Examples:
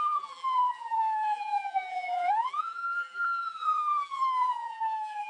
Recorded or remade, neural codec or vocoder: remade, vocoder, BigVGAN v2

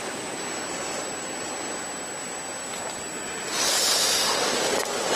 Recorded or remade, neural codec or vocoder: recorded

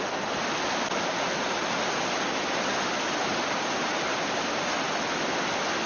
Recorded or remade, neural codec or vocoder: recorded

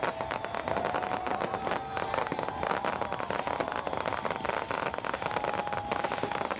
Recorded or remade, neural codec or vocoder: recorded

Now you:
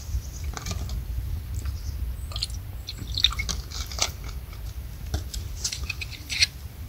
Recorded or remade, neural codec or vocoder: recorded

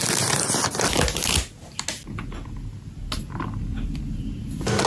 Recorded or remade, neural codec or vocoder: recorded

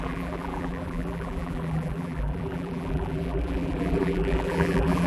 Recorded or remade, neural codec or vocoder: remade, vocoder, BigVGAN v2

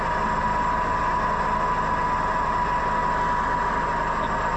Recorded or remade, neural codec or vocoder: recorded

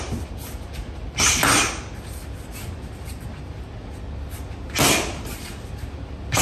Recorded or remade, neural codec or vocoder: recorded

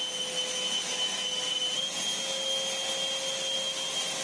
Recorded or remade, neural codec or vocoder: recorded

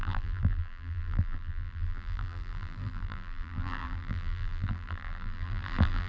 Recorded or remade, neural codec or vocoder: remade, vocoder, BigVGAN v2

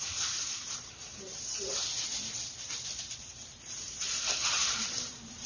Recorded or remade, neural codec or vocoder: remade, vocoder, BigVGAN v2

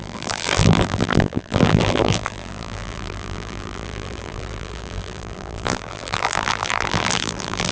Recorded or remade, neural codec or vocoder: remade, vocoder, BigVGAN v2